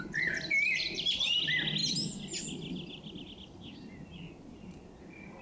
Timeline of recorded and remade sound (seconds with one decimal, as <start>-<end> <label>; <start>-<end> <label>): 0.0-5.4 recorded